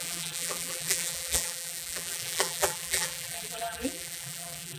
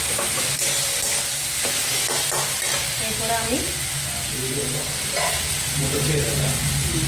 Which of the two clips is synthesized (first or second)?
first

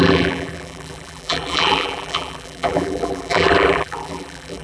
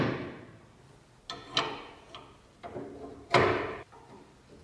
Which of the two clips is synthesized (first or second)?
first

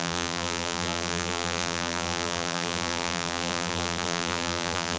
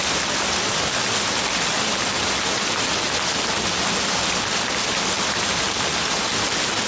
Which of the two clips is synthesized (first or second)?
first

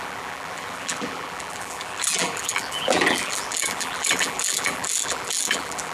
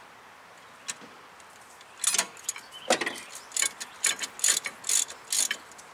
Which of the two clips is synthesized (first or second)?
first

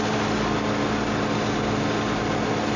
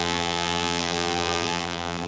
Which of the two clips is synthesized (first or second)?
second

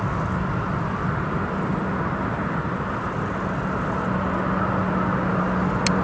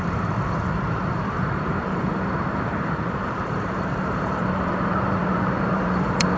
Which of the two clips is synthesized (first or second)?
second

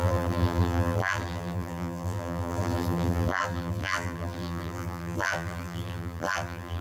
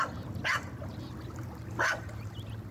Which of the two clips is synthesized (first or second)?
first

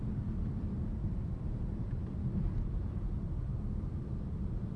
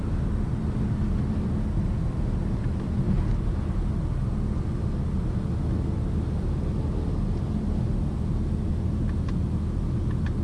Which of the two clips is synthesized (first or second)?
first